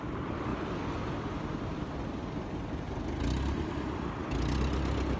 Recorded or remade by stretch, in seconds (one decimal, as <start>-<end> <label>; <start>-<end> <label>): 0.0-5.2 recorded